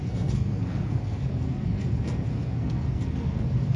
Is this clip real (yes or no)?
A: no